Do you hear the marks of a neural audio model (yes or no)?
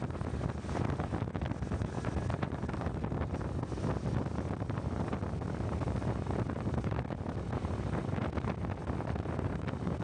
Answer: no